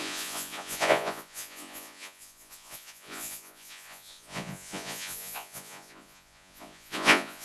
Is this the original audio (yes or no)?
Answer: no